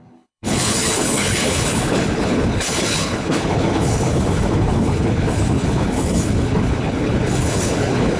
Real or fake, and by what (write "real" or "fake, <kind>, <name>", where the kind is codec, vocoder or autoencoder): fake, codec, HILCodec